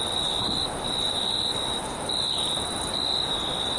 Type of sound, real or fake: real